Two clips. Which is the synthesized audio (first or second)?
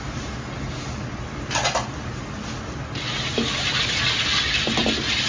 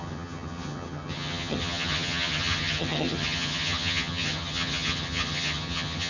second